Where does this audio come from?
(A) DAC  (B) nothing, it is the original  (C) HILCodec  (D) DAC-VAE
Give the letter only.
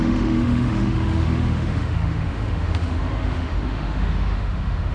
D